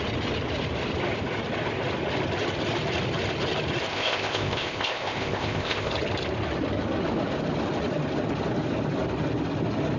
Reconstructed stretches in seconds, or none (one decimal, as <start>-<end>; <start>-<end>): 3.9-5.9